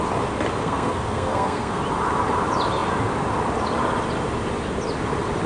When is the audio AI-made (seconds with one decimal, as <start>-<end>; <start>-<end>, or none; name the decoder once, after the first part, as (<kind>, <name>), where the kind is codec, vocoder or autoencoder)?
0.6-1.8 (codec, SNAC)